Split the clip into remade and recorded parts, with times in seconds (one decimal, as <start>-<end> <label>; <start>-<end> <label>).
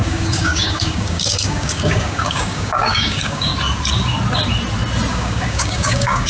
0.0-3.5 remade; 3.5-5.1 recorded; 5.1-6.3 remade